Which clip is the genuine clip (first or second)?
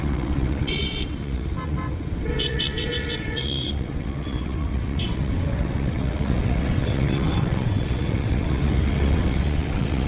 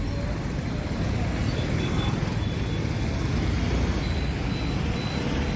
second